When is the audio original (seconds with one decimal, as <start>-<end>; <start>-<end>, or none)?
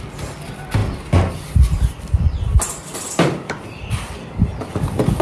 0.0-5.2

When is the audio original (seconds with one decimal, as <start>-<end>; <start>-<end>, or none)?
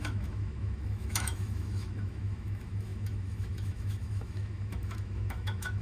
none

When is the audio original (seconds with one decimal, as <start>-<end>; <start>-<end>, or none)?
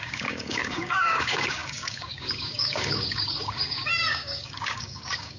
none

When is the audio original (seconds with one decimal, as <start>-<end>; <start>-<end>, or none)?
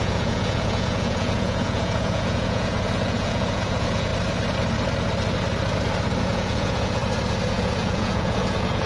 4.1-6.2; 7.0-7.5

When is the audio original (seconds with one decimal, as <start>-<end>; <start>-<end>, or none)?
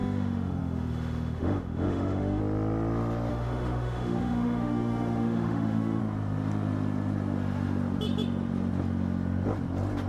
2.4-3.3; 6.0-10.1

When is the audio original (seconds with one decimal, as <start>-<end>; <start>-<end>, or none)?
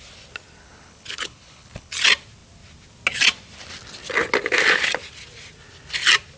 0.0-0.6; 1.9-6.4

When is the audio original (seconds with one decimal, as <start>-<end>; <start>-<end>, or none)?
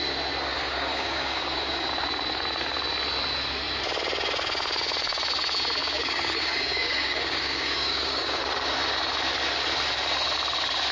0.0-0.5; 1.9-5.8; 8.4-10.9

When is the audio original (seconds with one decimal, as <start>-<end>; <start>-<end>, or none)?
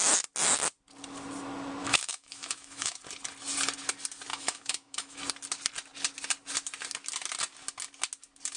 0.0-1.8; 3.0-4.3; 5.2-8.6